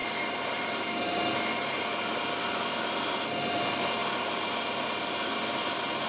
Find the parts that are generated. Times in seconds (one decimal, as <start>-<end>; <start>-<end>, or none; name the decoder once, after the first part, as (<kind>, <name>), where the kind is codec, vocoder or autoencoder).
none